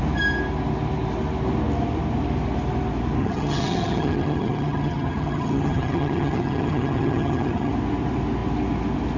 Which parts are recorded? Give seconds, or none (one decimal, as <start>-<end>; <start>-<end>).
0.0-3.2; 7.7-9.2